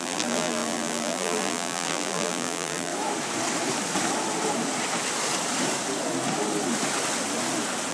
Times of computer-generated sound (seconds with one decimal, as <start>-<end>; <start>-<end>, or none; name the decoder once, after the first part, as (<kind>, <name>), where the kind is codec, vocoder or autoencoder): 0.0-2.9 (vocoder, BigVGAN v2)